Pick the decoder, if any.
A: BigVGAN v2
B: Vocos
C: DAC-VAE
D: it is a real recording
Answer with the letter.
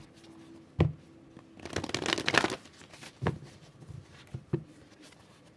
D